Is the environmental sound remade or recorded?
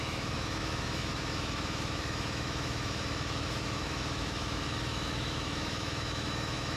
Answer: remade